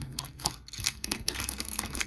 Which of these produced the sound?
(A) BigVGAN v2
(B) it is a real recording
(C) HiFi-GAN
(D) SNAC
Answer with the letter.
D